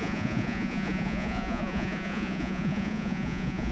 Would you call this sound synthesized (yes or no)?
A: yes